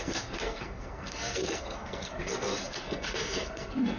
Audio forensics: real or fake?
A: fake